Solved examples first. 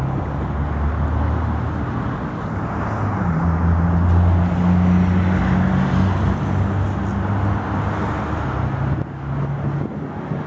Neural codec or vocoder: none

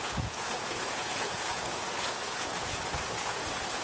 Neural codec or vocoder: vocoder, Vocos